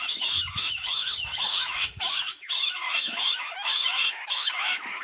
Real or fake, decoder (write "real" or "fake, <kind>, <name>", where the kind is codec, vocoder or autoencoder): fake, autoencoder, DAC-VAE